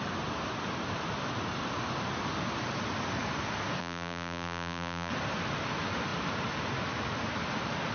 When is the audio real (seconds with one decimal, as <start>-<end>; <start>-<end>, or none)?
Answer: 0.0-3.8; 5.1-7.9